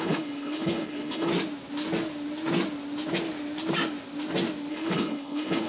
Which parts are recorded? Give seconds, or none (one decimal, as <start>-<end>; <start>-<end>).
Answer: 1.3-4.7